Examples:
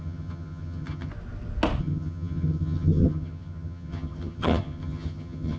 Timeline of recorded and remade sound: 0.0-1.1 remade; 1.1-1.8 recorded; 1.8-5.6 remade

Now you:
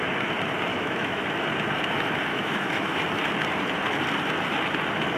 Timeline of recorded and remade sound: 0.0-0.7 recorded; 0.7-1.2 remade; 1.2-2.3 recorded; 2.3-3.0 remade; 3.0-5.2 recorded